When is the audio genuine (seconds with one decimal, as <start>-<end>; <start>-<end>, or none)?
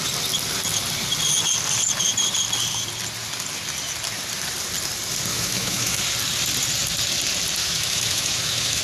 0.0-5.3; 6.0-7.6